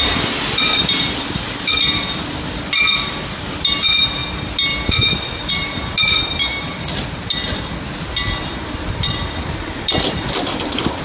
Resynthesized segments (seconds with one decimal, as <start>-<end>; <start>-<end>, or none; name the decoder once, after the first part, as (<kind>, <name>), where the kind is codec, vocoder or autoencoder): 0.0-4.2 (vocoder, BigVGAN v2); 5.5-11.0